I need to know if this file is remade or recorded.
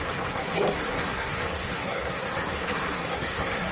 remade